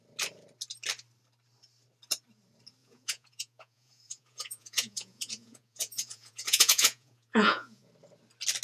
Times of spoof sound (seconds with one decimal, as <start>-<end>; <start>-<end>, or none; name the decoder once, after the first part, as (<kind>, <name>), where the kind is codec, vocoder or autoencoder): 2.8-7.9 (vocoder, Vocos)

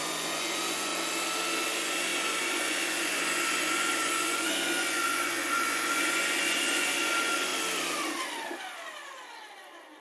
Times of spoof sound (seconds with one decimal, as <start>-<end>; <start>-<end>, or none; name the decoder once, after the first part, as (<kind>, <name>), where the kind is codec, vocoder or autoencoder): 0.0-0.9 (vocoder, Vocos); 1.7-7.5

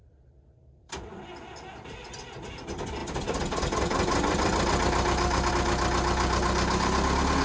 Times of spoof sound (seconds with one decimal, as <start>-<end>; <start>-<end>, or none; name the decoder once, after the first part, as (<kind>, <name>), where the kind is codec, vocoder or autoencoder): none

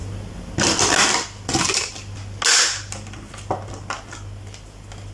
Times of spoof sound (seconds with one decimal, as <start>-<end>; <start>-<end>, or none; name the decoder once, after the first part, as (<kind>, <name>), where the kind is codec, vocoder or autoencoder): none

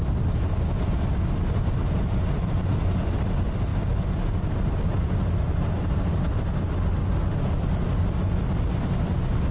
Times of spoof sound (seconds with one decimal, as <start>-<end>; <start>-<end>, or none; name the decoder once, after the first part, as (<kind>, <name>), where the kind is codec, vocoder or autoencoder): none